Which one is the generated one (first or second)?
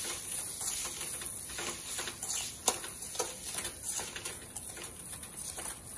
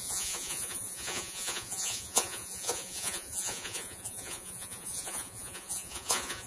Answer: second